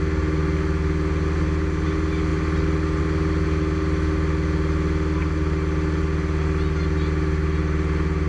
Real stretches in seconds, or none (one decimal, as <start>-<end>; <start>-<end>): 0.0-8.3